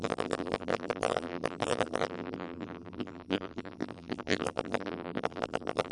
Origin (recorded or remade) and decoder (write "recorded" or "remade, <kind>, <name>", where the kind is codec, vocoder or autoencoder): remade, vocoder, BigVGAN v2